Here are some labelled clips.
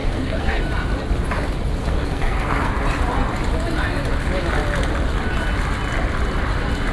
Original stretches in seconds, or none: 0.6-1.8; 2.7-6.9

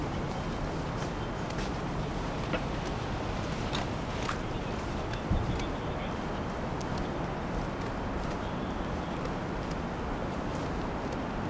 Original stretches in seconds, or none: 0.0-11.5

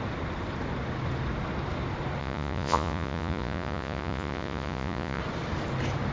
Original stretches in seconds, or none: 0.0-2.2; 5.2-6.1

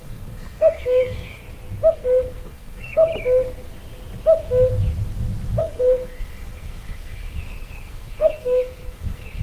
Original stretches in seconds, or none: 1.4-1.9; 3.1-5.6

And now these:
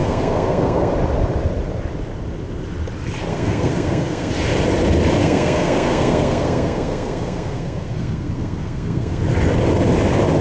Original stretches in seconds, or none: 0.9-3.3; 4.3-5.2; 9.2-10.4

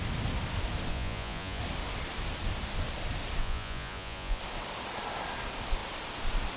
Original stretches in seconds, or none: 0.0-0.9; 1.6-3.4; 4.4-6.6

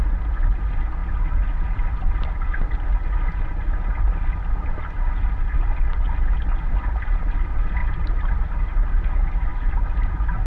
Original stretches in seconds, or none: 0.0-7.8; 8.9-10.5

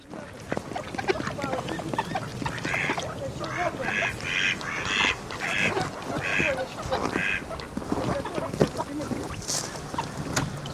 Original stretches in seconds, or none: 0.0-2.3; 3.1-10.7